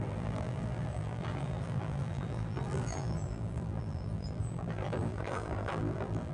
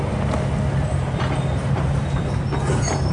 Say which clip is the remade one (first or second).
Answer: first